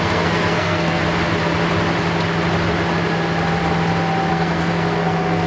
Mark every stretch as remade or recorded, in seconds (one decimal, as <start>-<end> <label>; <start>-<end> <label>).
0.0-1.0 remade; 1.0-4.3 recorded; 4.3-5.5 remade